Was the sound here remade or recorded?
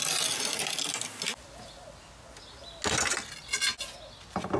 recorded